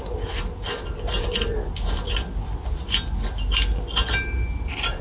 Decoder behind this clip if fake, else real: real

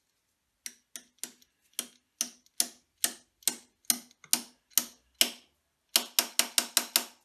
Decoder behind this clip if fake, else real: real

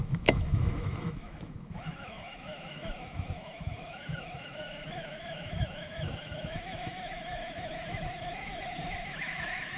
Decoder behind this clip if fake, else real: fake, autoencoder, DAC-VAE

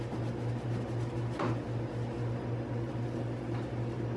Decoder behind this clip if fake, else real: real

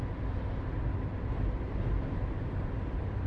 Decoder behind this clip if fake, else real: real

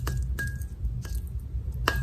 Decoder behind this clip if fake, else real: real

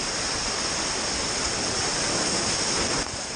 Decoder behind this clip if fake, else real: real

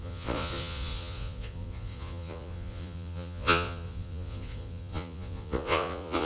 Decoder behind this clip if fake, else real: fake, vocoder, Vocos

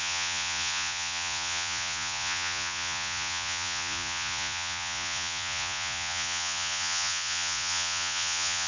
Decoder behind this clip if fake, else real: fake, vocoder, Vocos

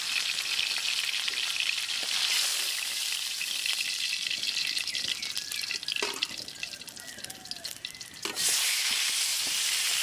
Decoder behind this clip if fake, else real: real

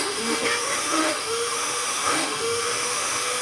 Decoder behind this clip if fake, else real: fake, autoencoder, DAC-VAE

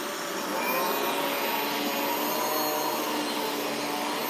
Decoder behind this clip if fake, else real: real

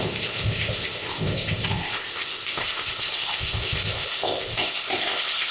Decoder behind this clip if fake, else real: fake, codec, ZipCodec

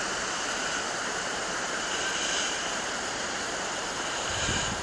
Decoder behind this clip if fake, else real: fake, vocoder, BigVGAN v2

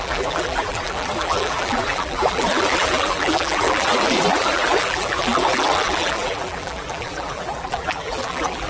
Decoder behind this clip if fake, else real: fake, vocoder, BigVGAN v2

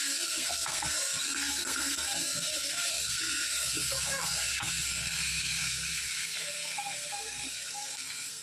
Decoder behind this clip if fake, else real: fake, codec, SNAC